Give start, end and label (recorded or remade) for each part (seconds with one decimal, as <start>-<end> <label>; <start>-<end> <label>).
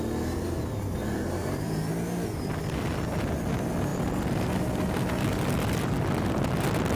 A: 0.0-1.0 recorded; 1.0-1.9 remade; 1.9-7.0 recorded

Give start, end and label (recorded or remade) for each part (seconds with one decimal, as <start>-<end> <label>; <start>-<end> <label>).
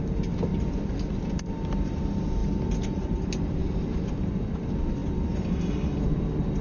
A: 0.0-6.6 recorded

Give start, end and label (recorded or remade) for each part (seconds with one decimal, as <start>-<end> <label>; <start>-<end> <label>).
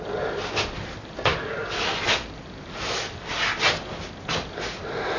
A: 0.0-5.2 recorded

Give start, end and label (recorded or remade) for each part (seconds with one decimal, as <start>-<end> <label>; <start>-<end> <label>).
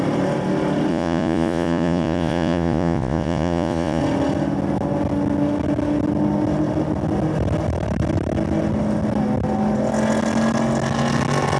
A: 0.0-0.9 recorded; 0.9-4.0 remade; 4.0-11.6 recorded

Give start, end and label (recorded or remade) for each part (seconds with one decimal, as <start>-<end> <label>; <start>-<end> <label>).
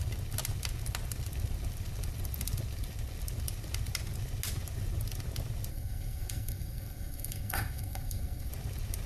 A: 0.0-5.7 recorded; 5.7-8.5 remade; 8.5-9.1 recorded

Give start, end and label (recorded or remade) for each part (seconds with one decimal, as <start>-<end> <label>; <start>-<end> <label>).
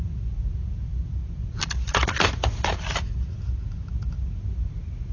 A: 0.0-5.1 recorded